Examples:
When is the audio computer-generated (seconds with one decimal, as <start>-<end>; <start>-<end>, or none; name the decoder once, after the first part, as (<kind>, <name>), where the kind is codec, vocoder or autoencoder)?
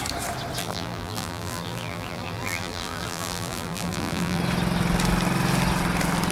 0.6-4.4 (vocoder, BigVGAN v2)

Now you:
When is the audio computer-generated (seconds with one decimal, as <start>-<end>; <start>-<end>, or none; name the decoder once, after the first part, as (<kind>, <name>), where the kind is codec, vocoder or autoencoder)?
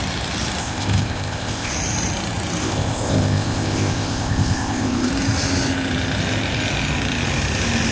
0.6-1.7 (codec, ZipCodec); 2.6-5.1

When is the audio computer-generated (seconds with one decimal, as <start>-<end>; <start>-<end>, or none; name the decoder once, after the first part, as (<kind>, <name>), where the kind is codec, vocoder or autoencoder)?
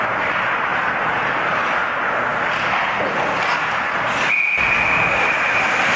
0.7-1.3 (vocoder, BigVGAN v2)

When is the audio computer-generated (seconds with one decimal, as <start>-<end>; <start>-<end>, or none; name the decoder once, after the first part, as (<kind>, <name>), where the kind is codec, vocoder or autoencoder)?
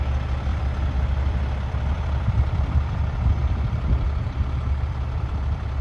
0.5-3.0 (vocoder, BigVGAN v2); 3.4-5.8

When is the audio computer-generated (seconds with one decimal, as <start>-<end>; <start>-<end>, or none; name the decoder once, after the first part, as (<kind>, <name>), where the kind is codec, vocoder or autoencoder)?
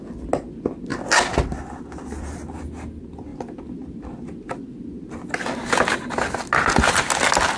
none